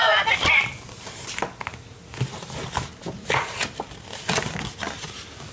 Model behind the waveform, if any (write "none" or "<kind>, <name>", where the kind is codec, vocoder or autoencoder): none